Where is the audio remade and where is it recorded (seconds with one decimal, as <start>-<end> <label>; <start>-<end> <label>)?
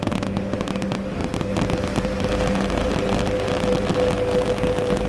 0.0-5.1 recorded